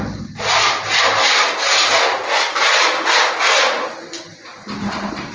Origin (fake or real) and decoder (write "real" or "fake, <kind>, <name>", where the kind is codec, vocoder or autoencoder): real